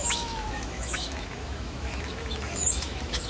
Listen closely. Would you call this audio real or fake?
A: fake